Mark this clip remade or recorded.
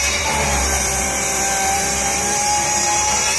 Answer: remade